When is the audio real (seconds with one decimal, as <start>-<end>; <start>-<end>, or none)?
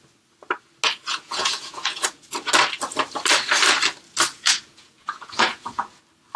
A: 0.0-1.1; 2.5-4.3; 6.0-6.4